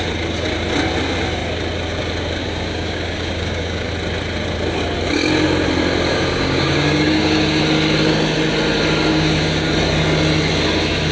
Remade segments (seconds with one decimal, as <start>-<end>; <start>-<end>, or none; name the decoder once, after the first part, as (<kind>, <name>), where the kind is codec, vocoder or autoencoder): 2.4-3.9 (codec, DAC); 6.1-7.6; 9.1-9.7